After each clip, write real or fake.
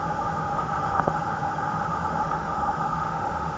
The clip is fake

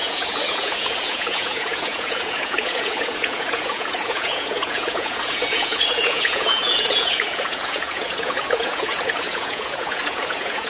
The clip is fake